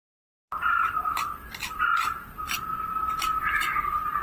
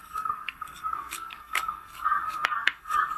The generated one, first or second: second